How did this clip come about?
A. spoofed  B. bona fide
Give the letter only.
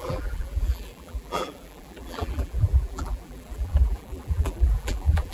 A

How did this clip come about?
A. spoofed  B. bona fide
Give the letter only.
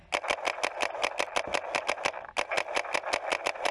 B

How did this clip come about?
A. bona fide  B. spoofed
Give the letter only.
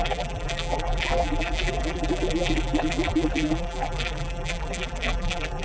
B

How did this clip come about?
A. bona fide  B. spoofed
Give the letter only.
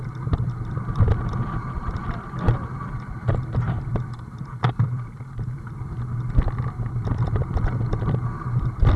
B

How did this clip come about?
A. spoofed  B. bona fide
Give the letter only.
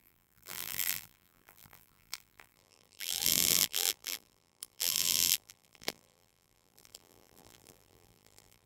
A